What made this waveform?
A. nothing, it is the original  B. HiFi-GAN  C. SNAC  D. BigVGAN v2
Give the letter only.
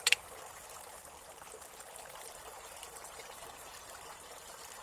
D